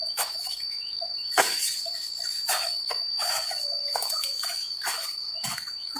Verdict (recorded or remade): remade